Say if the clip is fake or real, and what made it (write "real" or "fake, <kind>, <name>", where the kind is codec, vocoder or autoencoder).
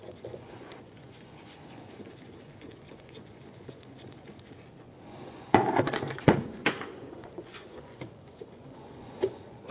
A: fake, vocoder, Vocos